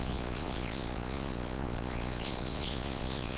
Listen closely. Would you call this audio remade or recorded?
remade